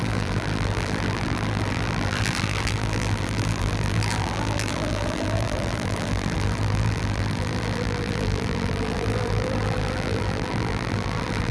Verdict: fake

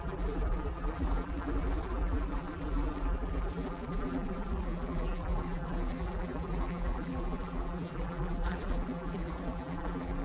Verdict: fake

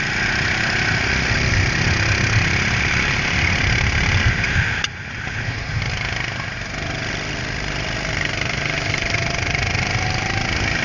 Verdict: real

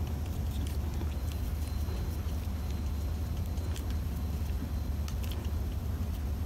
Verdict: real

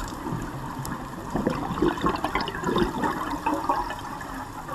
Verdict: real